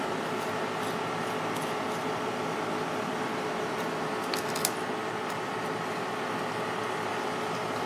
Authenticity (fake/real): real